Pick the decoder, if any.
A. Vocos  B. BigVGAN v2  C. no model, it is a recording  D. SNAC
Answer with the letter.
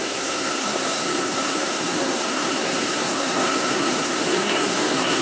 D